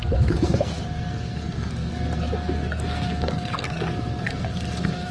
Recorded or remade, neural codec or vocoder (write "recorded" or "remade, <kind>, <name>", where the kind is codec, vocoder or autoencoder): remade, codec, SNAC